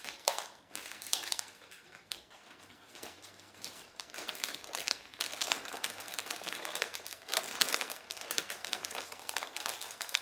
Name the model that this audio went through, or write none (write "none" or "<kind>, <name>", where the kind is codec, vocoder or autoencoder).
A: codec, SNAC